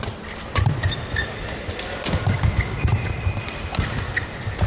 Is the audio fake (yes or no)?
no